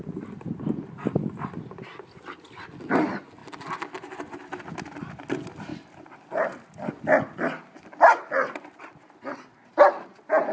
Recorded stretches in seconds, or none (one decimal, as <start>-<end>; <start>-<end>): 0.0-10.5